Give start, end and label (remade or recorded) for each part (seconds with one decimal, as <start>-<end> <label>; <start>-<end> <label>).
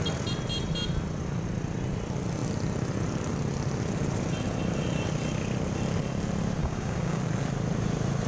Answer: 0.0-6.6 recorded; 6.6-7.2 remade; 7.2-8.3 recorded